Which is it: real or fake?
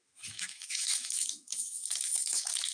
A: fake